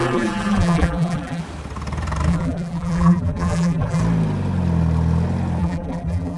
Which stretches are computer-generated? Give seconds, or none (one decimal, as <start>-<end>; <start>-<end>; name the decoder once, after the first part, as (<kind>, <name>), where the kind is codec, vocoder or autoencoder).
0.0-1.4 (vocoder, BigVGAN v2); 2.3-4.0; 5.6-6.4